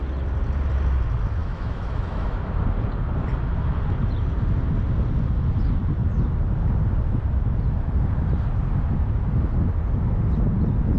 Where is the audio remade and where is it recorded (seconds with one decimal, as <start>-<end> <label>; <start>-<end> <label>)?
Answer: 0.0-1.4 recorded; 1.4-2.6 remade; 2.6-11.0 recorded